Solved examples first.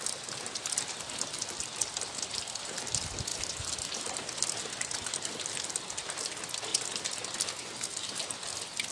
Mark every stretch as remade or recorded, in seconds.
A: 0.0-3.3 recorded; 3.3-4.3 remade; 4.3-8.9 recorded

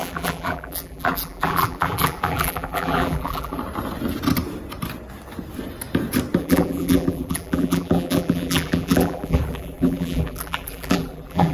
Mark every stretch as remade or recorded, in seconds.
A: 0.0-3.6 remade; 3.6-6.4 recorded; 6.4-11.5 remade

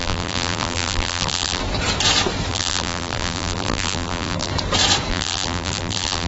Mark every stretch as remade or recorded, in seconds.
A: 0.0-1.6 remade; 1.6-2.5 recorded; 2.5-4.5 remade; 4.5-5.1 recorded; 5.1-6.3 remade

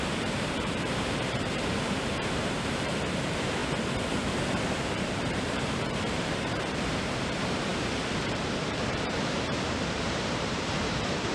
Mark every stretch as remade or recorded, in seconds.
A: 0.0-3.6 remade; 3.6-4.8 recorded; 4.8-11.3 remade

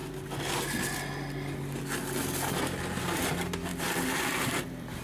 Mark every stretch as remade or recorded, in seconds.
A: 0.0-3.7 recorded; 3.7-5.0 remade